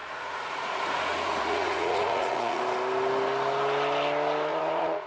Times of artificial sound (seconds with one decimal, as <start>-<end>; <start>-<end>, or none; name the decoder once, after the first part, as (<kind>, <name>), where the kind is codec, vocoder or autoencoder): 0.0-2.6 (vocoder, Vocos); 4.5-5.1